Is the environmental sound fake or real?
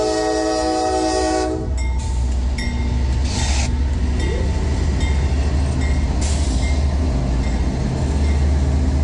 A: real